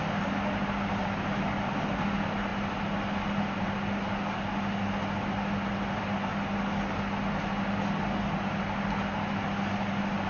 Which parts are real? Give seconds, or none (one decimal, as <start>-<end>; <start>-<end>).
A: 0.0-10.3